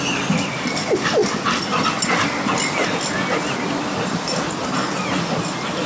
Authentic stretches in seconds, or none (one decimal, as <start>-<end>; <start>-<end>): 0.0-5.9